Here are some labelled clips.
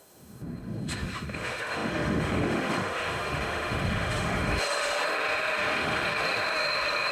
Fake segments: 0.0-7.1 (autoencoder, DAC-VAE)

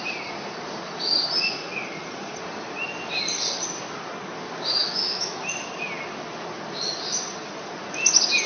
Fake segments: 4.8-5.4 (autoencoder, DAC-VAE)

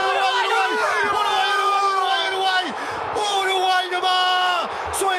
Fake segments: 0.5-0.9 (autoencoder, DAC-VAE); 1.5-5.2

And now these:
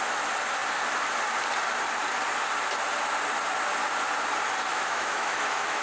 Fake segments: 4.7-5.8 (autoencoder, DAC-VAE)

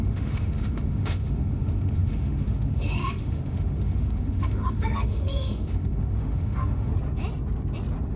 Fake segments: 0.0-6.9 (autoencoder, DAC-VAE)

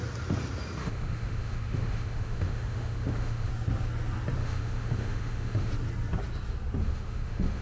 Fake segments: 0.8-3.5 (autoencoder, DAC-VAE); 4.4-5.7; 6.8-7.6